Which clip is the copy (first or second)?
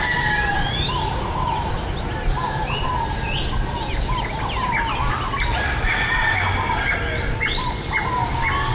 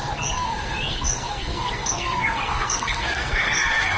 second